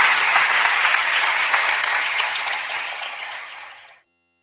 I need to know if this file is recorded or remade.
remade